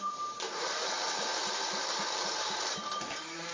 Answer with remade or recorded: remade